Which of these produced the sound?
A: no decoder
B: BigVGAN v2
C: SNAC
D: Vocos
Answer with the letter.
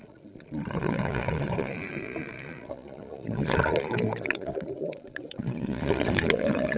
D